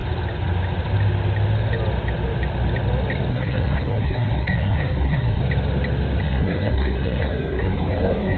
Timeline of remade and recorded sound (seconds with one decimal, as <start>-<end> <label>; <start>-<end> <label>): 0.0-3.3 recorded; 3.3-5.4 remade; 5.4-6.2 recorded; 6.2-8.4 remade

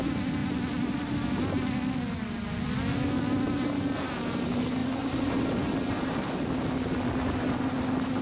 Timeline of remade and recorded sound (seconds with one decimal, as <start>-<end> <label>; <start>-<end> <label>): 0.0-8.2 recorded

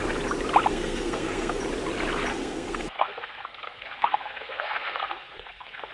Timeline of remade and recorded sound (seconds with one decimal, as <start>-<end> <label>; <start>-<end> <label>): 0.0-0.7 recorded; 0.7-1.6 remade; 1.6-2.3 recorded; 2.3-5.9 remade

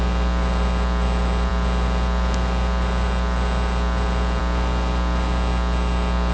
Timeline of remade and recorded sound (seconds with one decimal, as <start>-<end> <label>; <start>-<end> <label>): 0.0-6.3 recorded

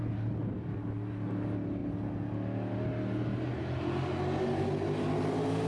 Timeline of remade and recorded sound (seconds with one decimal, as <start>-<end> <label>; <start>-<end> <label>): 0.0-5.7 recorded

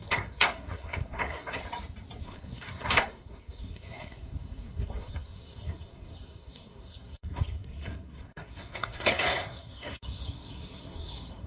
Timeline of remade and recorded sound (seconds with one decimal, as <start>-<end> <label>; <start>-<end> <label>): 0.0-1.6 remade; 1.6-2.2 recorded; 2.2-11.5 remade

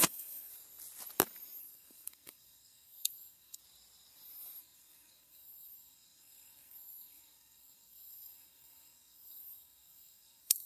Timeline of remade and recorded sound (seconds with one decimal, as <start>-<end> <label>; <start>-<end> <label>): 0.0-0.5 remade; 0.5-1.6 recorded; 1.6-3.6 remade; 3.6-4.6 recorded; 4.6-10.7 remade